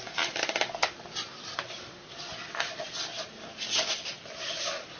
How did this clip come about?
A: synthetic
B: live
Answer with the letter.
B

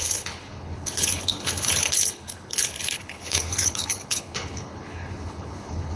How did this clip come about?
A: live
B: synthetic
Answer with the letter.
B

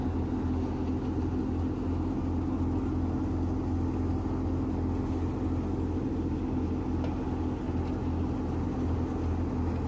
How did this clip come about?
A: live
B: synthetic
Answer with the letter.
A